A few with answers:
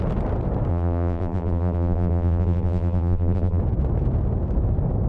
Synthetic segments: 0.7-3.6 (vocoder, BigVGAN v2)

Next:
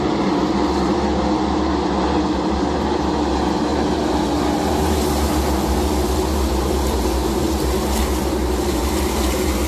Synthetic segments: none

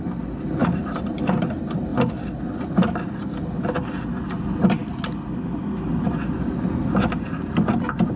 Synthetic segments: 0.6-1.2 (vocoder, BigVGAN v2)

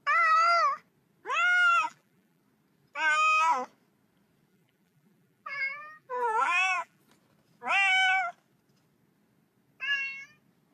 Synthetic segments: 1.7-2.4 (vocoder, BigVGAN v2); 4.5-7.0

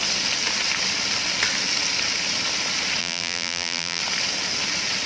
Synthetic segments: 3.0-4.0 (vocoder, BigVGAN v2)